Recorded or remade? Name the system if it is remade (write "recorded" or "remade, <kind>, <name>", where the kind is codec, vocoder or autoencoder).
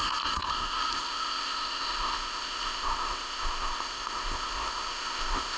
remade, codec, ZipCodec